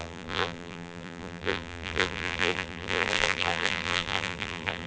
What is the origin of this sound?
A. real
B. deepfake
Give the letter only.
B